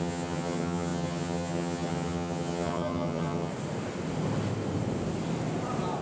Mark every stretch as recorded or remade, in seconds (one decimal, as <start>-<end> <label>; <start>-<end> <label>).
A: 0.0-3.5 remade; 3.5-6.0 recorded